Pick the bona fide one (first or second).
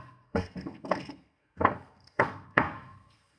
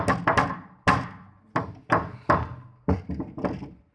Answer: second